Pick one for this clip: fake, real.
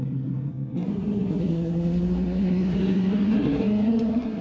fake